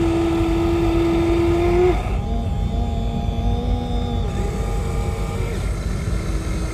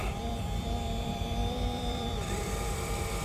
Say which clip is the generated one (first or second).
second